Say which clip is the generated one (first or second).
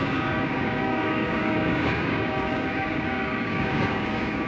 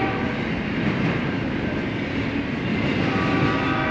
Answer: first